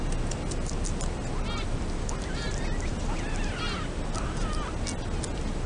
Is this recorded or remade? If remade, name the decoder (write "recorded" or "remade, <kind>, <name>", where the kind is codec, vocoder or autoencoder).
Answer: recorded